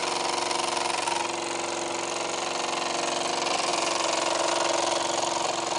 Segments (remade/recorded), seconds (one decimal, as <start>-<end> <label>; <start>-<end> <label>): 0.0-3.7 recorded; 3.7-4.5 remade; 4.5-5.8 recorded